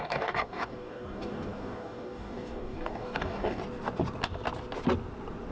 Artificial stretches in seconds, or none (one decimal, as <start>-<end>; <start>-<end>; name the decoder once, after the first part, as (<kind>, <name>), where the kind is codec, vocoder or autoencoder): 0.0-3.6 (codec, DAC)